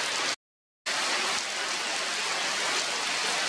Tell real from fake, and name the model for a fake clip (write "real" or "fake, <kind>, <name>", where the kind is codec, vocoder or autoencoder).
real